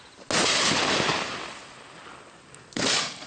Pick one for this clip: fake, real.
real